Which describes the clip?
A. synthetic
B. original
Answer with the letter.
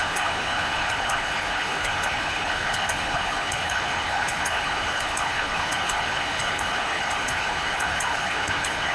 A